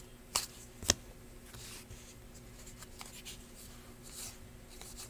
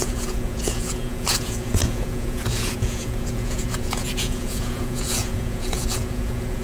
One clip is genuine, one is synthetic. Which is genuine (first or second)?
first